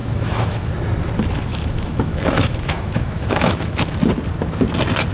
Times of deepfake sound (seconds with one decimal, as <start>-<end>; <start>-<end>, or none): 0.0-0.7; 1.5-3.9